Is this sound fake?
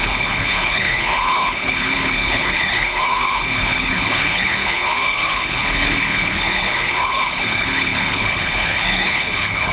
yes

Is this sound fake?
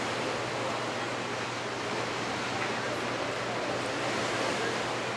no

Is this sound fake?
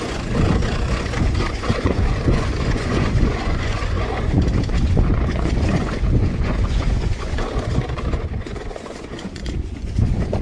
yes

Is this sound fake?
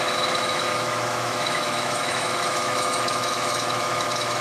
yes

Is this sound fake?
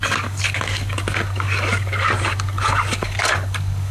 yes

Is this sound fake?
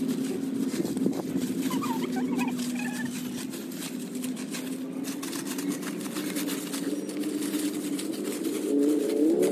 no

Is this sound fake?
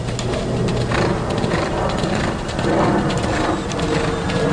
no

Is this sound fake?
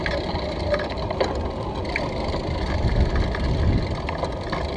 no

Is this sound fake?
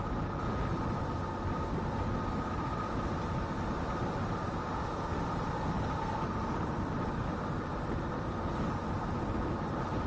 no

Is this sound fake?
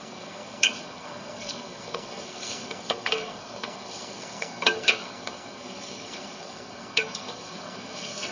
yes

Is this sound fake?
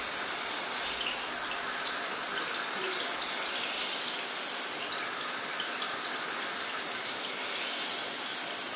no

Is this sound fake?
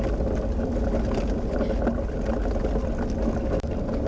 no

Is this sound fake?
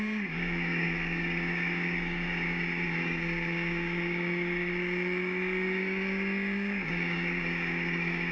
yes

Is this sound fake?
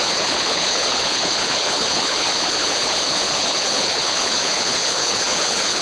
yes